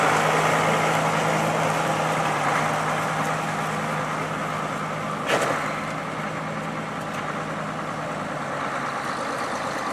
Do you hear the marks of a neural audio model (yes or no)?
no